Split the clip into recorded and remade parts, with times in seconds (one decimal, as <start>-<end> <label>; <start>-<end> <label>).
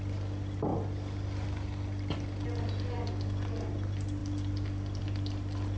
0.0-5.8 recorded